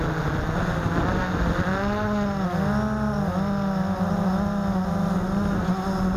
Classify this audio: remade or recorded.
recorded